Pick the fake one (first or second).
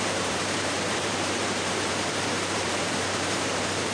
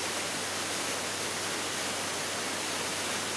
first